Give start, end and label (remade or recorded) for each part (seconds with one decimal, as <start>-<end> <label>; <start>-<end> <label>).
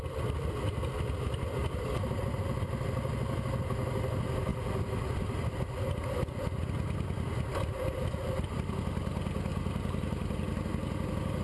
0.0-9.5 recorded; 9.5-11.4 remade